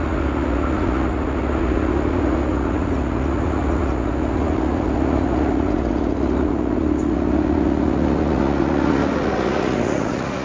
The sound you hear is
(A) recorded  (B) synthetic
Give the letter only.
B